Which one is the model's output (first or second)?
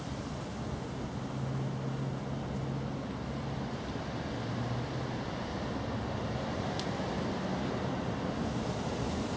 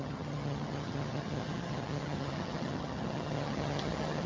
second